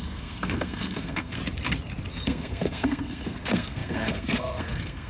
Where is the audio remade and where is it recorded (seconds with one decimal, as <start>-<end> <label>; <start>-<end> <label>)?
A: 0.0-1.4 remade; 1.4-2.1 recorded; 2.1-5.1 remade